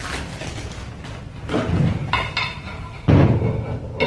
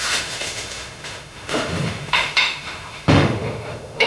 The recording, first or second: first